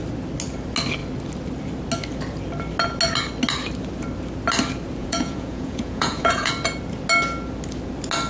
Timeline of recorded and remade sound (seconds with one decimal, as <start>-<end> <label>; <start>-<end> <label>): 0.0-5.0 recorded; 5.0-6.5 remade; 6.5-8.3 recorded